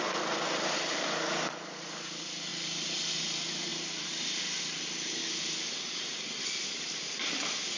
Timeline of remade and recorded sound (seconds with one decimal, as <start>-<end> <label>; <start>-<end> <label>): 0.0-7.8 recorded